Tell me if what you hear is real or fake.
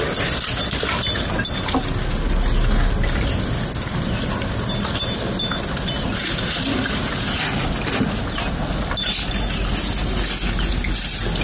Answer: real